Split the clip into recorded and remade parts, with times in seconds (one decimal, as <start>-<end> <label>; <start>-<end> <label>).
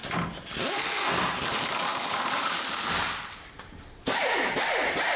0.0-1.3 recorded; 1.3-5.2 remade